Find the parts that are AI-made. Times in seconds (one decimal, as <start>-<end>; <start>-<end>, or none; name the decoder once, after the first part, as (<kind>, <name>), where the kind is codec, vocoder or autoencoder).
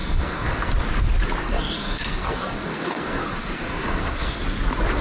0.0-0.7 (codec, SNAC); 1.4-4.4